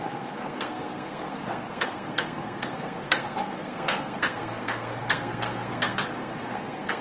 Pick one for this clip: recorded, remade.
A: remade